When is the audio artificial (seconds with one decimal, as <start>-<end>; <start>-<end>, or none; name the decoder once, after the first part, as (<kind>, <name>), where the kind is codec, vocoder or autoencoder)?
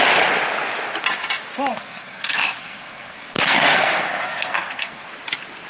1.7-5.1 (codec, SNAC)